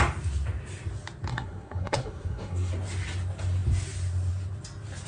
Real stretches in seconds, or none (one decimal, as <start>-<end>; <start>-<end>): 0.0-1.3; 2.7-5.1